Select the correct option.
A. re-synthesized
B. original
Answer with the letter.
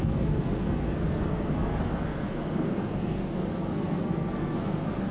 A